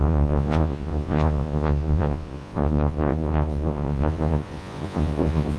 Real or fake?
fake